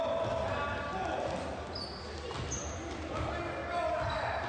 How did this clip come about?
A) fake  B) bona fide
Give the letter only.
B